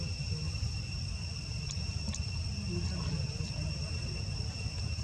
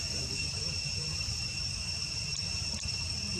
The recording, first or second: first